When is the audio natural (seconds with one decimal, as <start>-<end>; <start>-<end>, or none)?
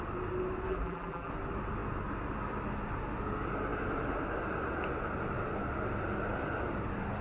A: 0.0-0.7; 1.3-7.2